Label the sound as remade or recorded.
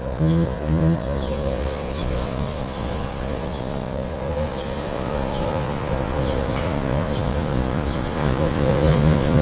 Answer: remade